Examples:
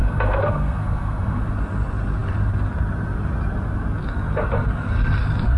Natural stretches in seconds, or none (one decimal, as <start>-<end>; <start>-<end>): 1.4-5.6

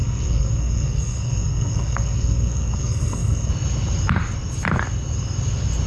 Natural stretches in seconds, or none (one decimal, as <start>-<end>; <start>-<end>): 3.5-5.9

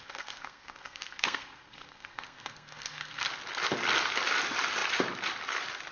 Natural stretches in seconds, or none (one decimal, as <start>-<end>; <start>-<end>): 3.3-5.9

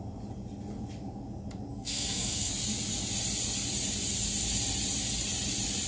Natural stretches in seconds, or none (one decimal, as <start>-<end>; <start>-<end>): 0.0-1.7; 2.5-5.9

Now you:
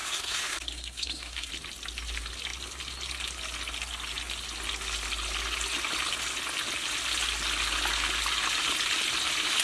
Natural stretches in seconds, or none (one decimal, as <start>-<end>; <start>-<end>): 1.5-9.6

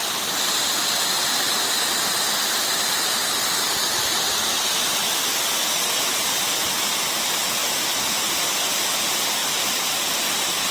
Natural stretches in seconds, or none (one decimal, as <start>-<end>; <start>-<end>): 0.0-10.7